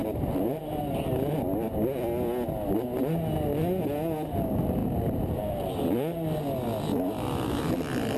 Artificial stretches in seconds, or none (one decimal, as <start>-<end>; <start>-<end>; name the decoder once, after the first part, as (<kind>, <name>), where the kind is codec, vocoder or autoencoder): 0.0-1.1 (vocoder, BigVGAN v2); 4.8-5.8; 6.9-7.7